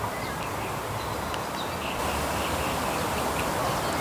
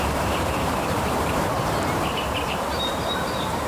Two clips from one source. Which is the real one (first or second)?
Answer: first